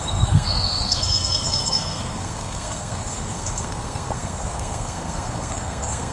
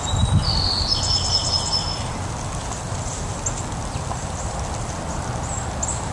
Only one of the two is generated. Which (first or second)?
first